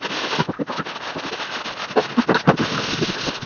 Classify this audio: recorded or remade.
recorded